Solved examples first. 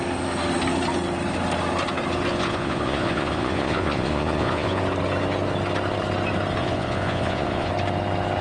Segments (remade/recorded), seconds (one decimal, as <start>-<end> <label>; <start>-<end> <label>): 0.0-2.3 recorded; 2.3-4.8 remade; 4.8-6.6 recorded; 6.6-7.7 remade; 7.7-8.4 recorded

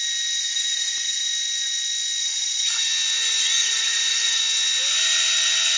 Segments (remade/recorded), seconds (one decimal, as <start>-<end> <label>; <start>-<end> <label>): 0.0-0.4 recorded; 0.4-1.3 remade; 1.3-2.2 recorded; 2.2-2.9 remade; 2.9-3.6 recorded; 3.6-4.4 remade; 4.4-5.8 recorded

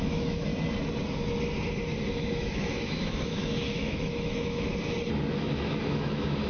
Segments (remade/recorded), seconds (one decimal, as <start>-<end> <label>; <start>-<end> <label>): 0.0-0.5 remade; 0.5-2.1 recorded; 2.1-4.7 remade; 4.7-5.3 recorded; 5.3-6.5 remade

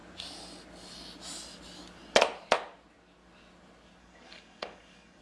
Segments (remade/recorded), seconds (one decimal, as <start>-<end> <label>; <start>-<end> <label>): 0.0-4.0 recorded; 4.0-5.2 remade

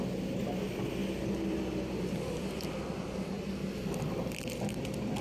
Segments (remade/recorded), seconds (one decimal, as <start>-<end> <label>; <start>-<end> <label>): 0.0-1.0 recorded; 1.0-4.1 remade; 4.1-5.2 recorded

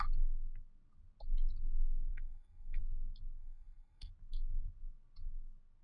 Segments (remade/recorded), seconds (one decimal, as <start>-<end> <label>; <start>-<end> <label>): 0.0-2.1 recorded; 2.1-2.8 remade; 2.8-3.4 recorded; 3.4-4.1 remade; 4.1-5.8 recorded